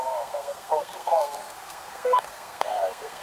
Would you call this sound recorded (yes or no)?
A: no